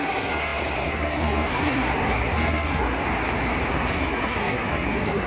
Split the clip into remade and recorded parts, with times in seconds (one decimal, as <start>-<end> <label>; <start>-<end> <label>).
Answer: 0.0-3.0 remade; 3.0-3.7 recorded; 3.7-5.3 remade